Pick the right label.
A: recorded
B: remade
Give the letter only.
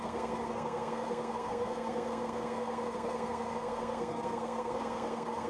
B